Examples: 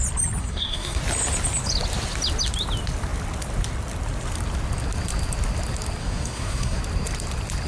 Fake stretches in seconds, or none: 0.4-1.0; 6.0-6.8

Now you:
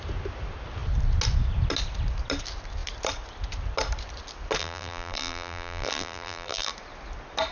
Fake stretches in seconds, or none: 4.6-6.7

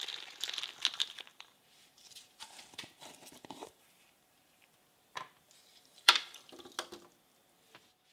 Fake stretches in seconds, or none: 1.3-4.7; 5.7-6.7